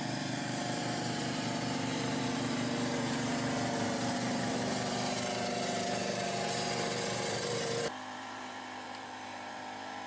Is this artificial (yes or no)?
yes